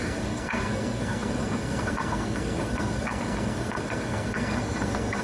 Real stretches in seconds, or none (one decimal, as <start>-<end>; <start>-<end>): none